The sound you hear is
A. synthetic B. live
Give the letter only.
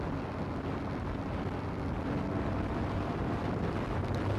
B